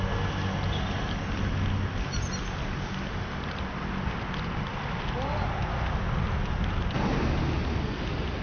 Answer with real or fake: real